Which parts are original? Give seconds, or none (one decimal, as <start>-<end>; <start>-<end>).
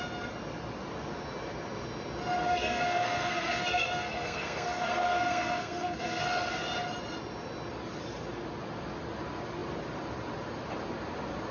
0.0-2.4; 6.2-11.5